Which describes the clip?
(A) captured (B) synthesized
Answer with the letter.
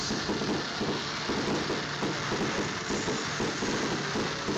A